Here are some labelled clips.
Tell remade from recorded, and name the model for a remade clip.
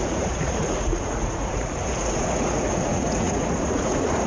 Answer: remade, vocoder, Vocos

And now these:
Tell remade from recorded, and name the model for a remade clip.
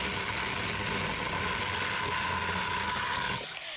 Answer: recorded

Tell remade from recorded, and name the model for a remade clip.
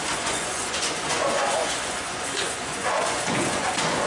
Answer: remade, vocoder, Vocos